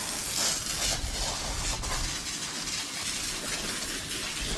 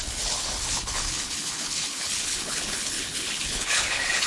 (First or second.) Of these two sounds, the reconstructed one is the second